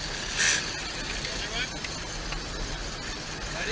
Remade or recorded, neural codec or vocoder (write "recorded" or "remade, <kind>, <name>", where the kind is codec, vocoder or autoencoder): recorded